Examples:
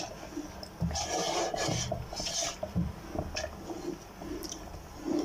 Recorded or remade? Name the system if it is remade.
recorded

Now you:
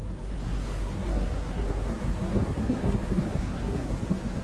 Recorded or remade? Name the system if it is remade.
remade, codec, SNAC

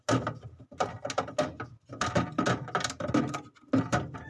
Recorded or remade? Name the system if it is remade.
recorded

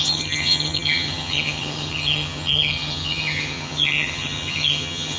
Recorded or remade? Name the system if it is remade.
remade, vocoder, HiFi-GAN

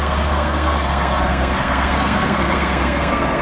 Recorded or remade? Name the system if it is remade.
remade, codec, SNAC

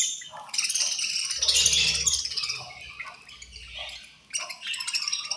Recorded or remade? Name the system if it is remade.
recorded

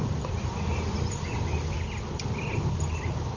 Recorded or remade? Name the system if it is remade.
recorded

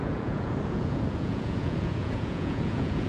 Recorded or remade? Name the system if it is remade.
remade, vocoder, Vocos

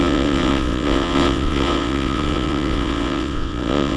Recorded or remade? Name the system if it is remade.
remade, vocoder, WaveNeXt